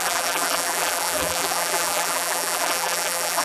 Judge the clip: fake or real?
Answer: fake